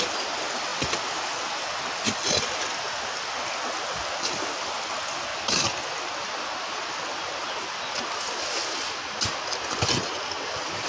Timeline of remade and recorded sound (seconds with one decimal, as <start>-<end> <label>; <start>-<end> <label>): 0.0-10.9 recorded